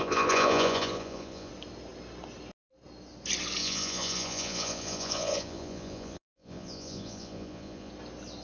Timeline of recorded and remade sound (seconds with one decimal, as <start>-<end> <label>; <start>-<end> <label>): 0.0-1.5 remade; 1.5-3.6 recorded; 3.6-7.9 remade; 7.9-8.4 recorded